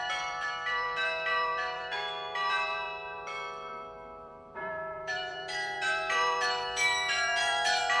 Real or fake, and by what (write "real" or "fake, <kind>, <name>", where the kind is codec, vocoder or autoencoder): fake, vocoder, BigVGAN v2